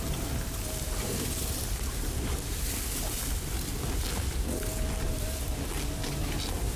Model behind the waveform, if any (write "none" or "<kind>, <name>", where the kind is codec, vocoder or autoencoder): none